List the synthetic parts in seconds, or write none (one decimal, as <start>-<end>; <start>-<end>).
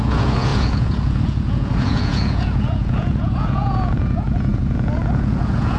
0.0-5.8